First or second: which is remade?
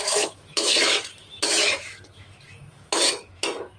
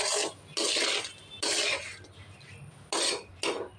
first